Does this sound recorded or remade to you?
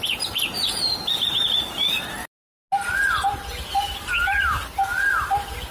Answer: recorded